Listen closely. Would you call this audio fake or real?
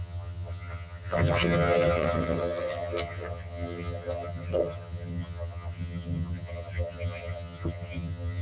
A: fake